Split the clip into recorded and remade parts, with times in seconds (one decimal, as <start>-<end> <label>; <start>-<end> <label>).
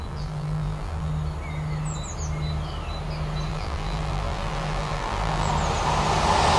0.0-1.1 remade; 1.1-3.5 recorded; 3.5-5.5 remade; 5.5-6.6 recorded